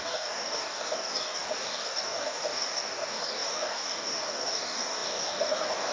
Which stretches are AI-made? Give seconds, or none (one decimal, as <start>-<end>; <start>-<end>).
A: 0.0-5.9